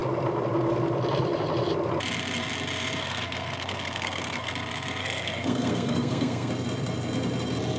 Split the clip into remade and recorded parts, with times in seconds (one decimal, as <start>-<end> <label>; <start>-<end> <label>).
0.0-3.0 recorded; 3.0-4.5 remade; 4.5-5.0 recorded; 5.0-6.5 remade; 6.5-7.8 recorded

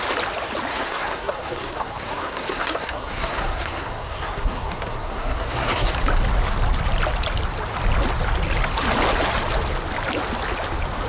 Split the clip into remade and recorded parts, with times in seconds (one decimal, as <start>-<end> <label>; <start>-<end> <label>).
0.0-0.7 recorded; 0.7-5.9 remade; 5.9-11.1 recorded

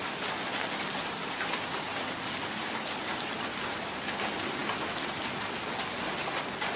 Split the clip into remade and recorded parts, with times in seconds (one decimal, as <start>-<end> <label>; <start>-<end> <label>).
0.0-6.8 recorded

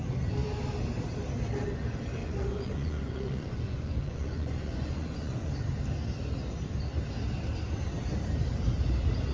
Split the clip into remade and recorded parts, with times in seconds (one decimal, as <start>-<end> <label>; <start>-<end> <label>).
0.0-2.2 recorded; 2.2-5.5 remade; 5.5-9.3 recorded

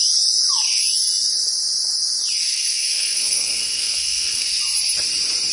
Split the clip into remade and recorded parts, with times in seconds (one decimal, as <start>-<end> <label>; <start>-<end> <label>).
0.0-2.4 recorded; 2.4-4.6 remade; 4.6-5.5 recorded

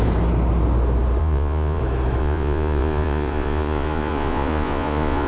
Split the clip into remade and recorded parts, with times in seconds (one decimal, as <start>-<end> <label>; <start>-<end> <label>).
0.0-1.2 recorded; 1.2-1.8 remade; 1.8-2.2 recorded; 2.2-5.3 remade